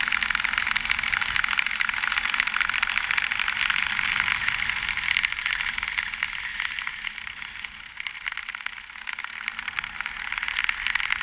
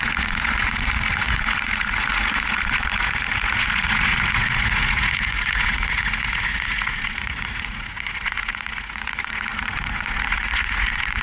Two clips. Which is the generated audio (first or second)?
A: second